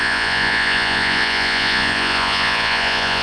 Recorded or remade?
remade